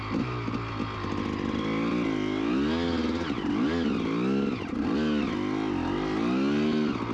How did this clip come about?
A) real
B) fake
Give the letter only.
A